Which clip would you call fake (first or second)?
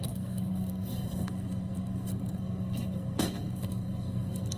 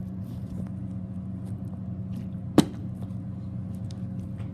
first